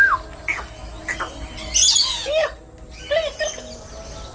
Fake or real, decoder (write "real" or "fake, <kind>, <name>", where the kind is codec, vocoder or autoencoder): real